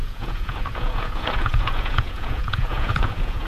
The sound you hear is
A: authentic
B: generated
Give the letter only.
B